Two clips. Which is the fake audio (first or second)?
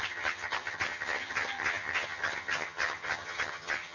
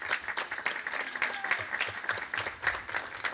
first